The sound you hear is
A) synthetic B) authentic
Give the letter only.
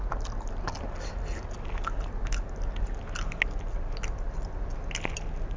B